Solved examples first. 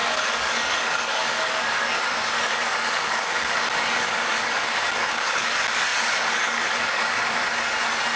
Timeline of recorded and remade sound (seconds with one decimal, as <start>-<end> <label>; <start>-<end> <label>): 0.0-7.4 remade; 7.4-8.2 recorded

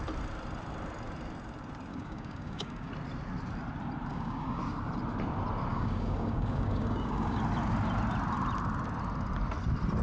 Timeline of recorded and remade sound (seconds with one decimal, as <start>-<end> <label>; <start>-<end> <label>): 0.0-1.9 recorded; 1.9-2.9 remade; 2.9-4.1 recorded; 4.1-4.6 remade; 4.6-5.7 recorded; 5.7-7.4 remade; 7.4-10.0 recorded

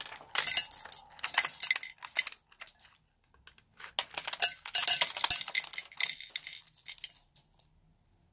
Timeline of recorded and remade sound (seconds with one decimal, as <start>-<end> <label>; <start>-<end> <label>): 0.0-8.3 recorded

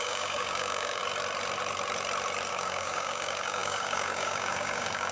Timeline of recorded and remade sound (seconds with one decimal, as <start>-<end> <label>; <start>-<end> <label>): 0.0-1.0 remade; 1.0-2.5 recorded; 2.5-5.1 remade

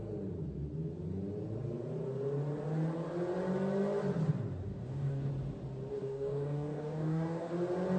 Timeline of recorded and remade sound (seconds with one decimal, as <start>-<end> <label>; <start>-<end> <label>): 0.0-4.7 recorded; 4.7-5.3 remade; 5.3-5.9 recorded; 5.9-7.5 remade; 7.5-8.0 recorded

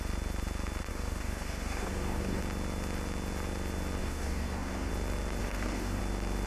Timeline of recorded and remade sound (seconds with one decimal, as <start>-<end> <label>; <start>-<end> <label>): 0.0-0.9 recorded; 0.9-2.4 remade; 2.4-4.0 recorded; 4.0-4.9 remade; 4.9-5.4 recorded; 5.4-6.0 remade; 6.0-6.5 recorded